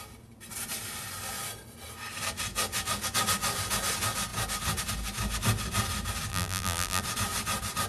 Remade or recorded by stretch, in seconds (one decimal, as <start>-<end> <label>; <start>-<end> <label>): 0.0-6.3 recorded; 6.3-7.0 remade; 7.0-7.9 recorded